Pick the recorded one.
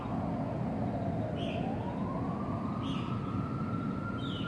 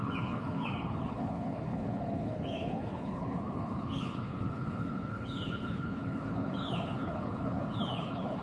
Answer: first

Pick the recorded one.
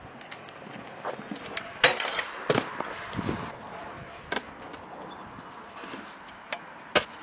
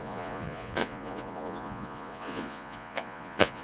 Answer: first